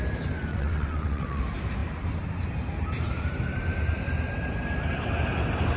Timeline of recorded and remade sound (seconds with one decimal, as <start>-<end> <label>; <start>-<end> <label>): 0.0-0.5 recorded; 0.5-1.4 remade; 1.4-5.8 recorded